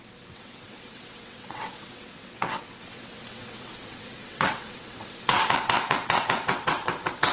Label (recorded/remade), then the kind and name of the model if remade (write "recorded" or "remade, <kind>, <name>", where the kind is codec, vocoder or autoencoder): remade, vocoder, WaveNeXt